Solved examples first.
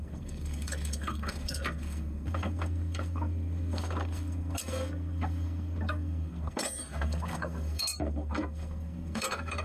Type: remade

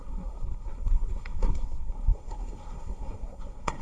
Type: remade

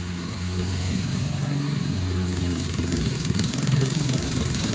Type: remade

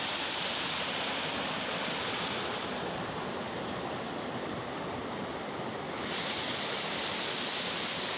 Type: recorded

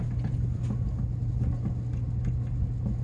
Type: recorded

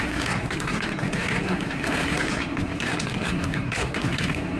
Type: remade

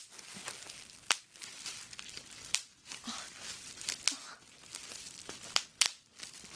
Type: recorded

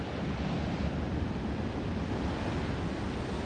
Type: recorded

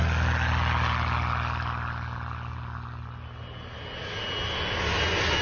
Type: recorded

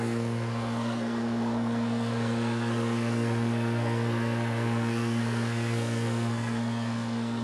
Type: remade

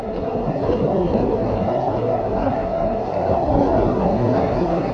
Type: remade